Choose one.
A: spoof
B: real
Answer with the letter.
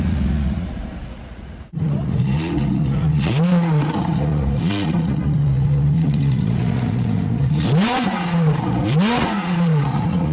A